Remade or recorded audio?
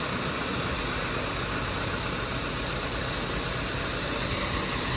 recorded